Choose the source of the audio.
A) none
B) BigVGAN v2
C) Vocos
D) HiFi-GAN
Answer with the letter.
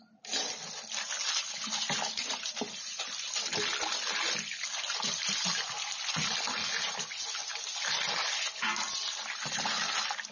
A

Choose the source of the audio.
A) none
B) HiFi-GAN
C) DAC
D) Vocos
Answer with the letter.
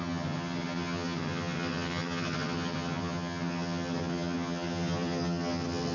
B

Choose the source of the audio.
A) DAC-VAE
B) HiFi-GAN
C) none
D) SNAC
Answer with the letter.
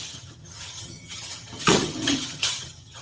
B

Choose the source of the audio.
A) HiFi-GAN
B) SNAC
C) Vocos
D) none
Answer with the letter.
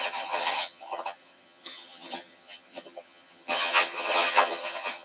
A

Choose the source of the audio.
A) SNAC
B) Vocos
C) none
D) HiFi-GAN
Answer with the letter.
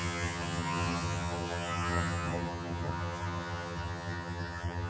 D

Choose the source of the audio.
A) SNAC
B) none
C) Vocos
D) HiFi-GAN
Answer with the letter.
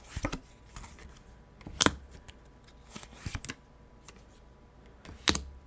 B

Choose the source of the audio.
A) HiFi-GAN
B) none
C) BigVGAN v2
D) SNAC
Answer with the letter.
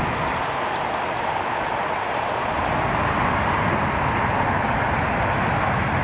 B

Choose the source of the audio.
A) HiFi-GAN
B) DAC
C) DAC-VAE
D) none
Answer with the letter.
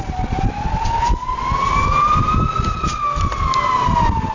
D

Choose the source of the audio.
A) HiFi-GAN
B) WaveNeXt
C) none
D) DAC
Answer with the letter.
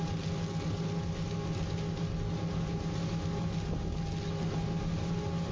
C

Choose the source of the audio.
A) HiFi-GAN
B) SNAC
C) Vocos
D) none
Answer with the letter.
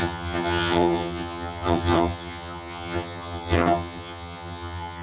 A